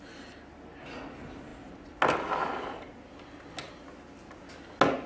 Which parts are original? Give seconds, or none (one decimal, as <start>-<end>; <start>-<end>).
0.0-5.1